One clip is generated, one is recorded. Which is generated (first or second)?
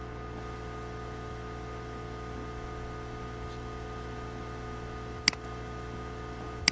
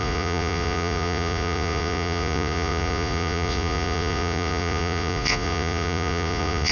second